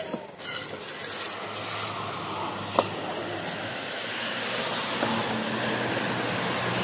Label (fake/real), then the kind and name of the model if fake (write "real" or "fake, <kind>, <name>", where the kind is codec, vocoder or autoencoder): real